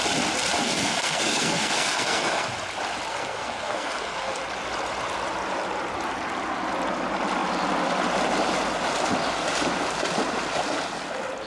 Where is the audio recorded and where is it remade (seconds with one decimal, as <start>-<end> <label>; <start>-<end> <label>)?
0.0-0.6 recorded; 0.6-2.5 remade; 2.5-3.1 recorded; 3.1-4.4 remade; 4.4-11.5 recorded